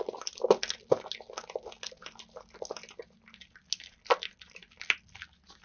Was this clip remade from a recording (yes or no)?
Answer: no